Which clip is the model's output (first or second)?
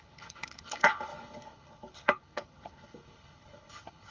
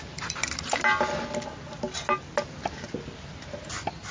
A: first